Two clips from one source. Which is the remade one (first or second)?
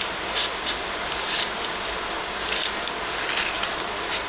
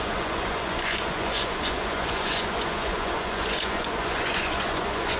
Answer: second